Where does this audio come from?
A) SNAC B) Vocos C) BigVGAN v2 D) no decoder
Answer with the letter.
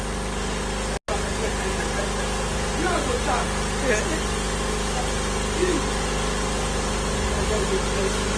D